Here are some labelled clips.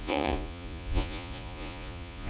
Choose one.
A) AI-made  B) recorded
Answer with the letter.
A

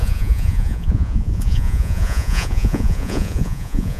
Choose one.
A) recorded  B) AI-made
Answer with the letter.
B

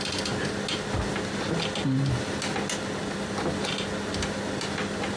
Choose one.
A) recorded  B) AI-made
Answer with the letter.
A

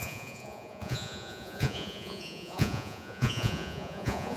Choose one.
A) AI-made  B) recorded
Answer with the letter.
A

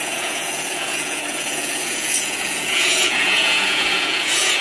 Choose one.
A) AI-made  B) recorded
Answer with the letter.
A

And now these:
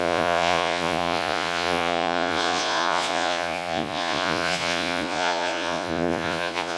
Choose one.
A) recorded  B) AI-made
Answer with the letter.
B